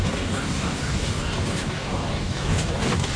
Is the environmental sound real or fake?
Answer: fake